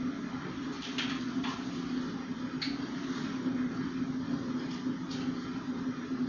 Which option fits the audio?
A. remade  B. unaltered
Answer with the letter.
B